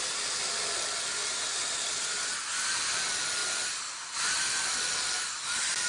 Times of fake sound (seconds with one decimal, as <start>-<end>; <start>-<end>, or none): 1.2-2.1